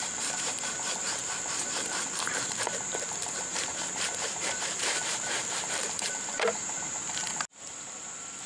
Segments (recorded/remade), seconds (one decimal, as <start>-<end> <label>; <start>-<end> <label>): 0.0-7.2 remade; 7.2-7.7 recorded; 7.7-8.5 remade